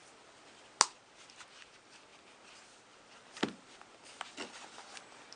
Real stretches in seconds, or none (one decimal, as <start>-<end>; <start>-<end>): 0.0-5.4